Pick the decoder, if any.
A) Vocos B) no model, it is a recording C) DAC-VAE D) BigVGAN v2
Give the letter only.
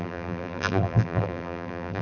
D